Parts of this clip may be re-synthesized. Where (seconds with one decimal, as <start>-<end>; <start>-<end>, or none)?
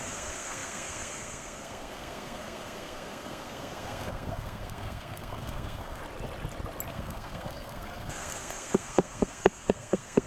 0.0-6.0; 6.9-10.3